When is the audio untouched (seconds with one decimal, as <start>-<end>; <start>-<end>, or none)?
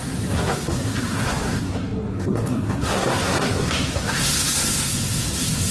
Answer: none